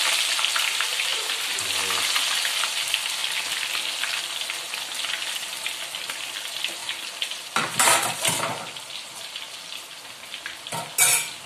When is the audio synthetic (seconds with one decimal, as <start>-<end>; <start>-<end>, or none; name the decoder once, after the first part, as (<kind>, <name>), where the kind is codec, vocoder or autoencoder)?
1.1-1.7 (vocoder, BigVGAN v2)